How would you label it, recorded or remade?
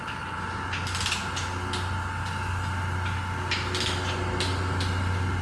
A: recorded